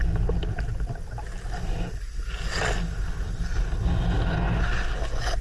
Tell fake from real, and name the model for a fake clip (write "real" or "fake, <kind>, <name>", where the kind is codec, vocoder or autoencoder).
real